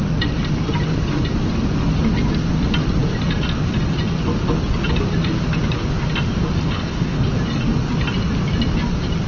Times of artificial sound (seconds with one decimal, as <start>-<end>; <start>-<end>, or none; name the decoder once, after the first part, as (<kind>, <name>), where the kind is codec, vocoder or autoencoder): 6.6-7.3 (codec, HILCodec)